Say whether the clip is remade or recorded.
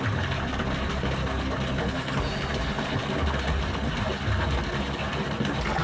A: recorded